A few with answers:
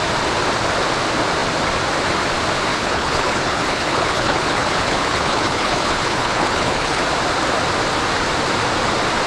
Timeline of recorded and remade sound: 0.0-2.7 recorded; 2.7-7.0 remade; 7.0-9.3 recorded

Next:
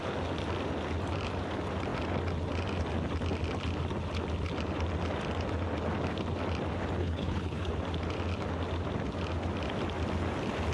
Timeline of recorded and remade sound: 0.0-7.0 recorded; 7.0-7.7 remade; 7.7-10.7 recorded

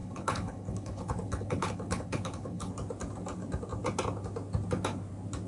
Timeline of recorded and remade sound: 0.0-2.7 remade; 2.7-5.5 recorded